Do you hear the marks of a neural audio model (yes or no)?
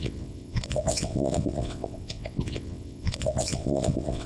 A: yes